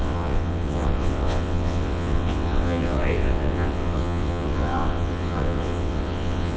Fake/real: fake